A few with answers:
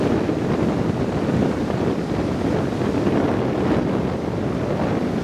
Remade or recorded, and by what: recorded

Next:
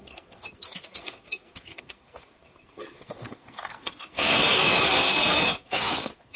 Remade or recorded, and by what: remade, codec, SNAC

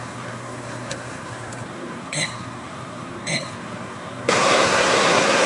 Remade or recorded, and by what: remade, codec, SNAC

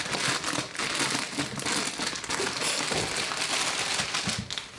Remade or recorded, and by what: recorded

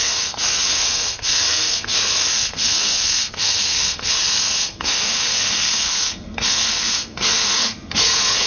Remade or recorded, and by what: remade, codec, SNAC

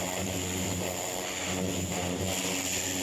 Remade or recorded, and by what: recorded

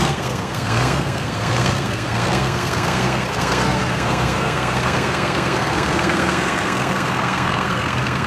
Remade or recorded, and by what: remade, codec, SNAC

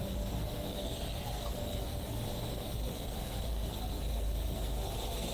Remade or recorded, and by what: remade, codec, SNAC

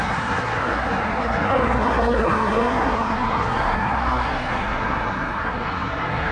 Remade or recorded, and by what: remade, codec, SNAC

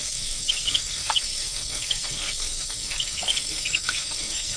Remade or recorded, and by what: remade, codec, SNAC